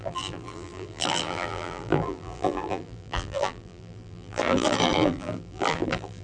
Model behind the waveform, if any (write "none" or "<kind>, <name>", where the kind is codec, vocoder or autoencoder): vocoder, BigVGAN v2